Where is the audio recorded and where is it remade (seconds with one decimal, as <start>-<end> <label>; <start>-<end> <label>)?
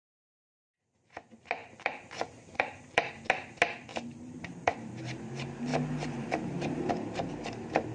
0.0-1.6 recorded; 1.6-3.1 remade; 3.1-3.9 recorded; 3.9-5.0 remade; 5.0-5.7 recorded; 5.7-6.9 remade; 6.9-7.9 recorded